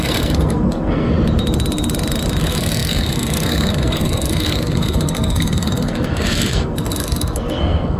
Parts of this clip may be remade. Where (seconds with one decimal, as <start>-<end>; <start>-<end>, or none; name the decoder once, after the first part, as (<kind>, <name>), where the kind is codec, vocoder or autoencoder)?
0.0-1.1 (codec, SNAC); 2.4-8.0